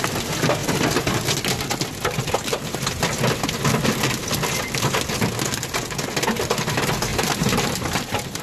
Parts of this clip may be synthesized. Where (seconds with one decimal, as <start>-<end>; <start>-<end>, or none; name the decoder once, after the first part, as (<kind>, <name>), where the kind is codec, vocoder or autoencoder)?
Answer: 7.1-8.4 (vocoder, BigVGAN v2)